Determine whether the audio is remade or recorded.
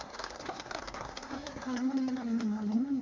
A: remade